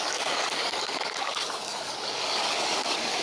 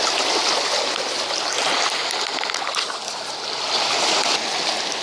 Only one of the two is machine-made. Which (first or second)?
first